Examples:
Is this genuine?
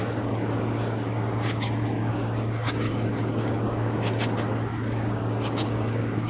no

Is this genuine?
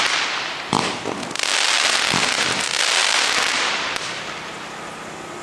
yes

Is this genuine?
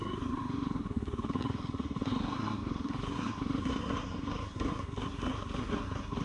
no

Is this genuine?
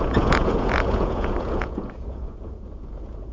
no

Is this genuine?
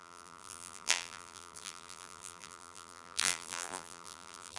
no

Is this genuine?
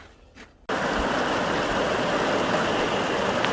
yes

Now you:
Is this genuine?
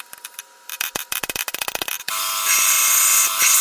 yes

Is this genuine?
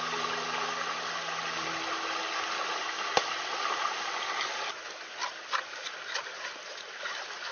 yes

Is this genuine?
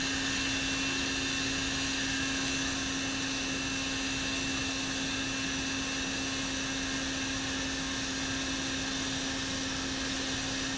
yes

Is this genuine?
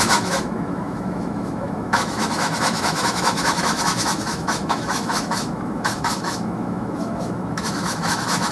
no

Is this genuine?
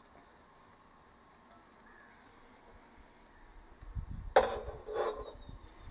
yes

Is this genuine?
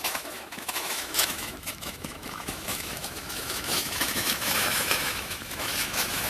no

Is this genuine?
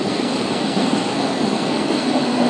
no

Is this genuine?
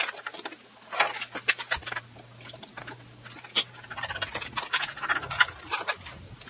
no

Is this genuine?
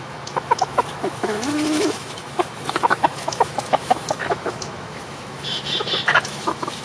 no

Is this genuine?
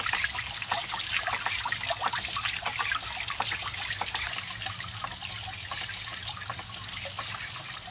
yes